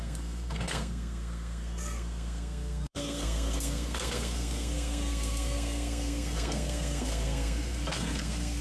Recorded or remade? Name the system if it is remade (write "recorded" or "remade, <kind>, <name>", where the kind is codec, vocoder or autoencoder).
remade, codec, SNAC